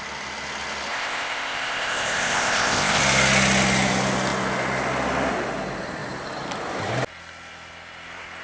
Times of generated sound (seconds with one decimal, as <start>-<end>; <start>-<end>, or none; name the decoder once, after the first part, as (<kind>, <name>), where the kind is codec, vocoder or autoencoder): 0.9-3.0 (codec, ZipCodec)